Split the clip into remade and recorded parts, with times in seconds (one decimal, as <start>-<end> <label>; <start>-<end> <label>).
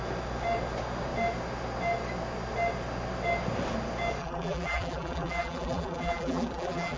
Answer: 0.0-4.2 recorded; 4.2-7.0 remade